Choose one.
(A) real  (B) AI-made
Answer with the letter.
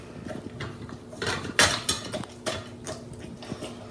A